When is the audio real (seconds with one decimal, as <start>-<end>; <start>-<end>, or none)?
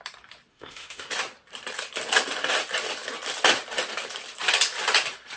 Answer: 0.0-0.5; 1.1-5.4